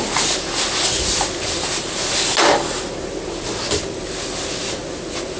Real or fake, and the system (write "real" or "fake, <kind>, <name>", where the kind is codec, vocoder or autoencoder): real